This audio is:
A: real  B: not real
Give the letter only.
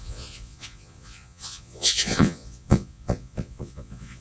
B